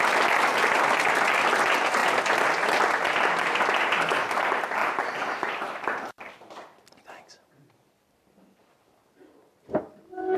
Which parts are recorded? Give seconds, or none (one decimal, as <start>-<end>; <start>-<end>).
0.0-4.8; 8.7-10.4

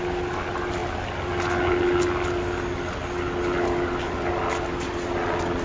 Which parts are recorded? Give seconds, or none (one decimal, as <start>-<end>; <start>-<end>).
0.0-5.6

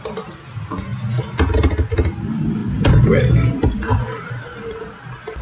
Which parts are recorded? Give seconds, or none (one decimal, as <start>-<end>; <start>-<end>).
0.0-5.4